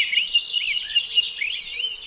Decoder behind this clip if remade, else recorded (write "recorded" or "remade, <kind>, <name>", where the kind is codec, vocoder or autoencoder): recorded